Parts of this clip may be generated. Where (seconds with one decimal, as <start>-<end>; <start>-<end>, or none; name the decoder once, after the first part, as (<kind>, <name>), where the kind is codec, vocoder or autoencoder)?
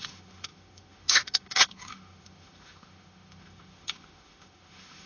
0.0-5.1 (autoencoder, DAC-VAE)